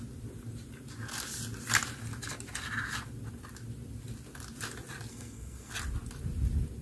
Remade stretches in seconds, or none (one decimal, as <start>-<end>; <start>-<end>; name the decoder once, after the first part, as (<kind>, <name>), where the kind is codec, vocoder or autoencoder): 5.1-5.7 (codec, SNAC)